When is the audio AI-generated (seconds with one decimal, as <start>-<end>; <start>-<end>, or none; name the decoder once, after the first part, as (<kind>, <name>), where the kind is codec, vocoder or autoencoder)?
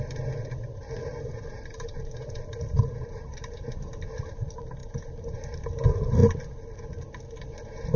1.1-3.8 (vocoder, BigVGAN v2); 4.8-5.6